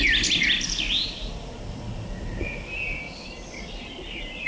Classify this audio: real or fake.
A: real